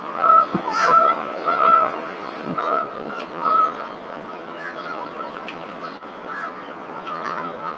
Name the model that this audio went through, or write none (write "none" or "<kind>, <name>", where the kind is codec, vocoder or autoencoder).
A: vocoder, Vocos